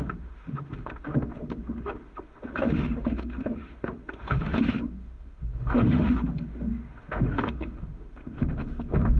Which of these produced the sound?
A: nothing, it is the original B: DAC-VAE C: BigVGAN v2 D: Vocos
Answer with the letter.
B